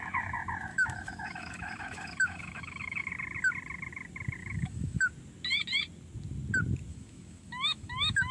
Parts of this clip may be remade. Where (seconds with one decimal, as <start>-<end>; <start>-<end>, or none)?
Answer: 0.7-3.1; 4.4-5.1; 6.9-8.3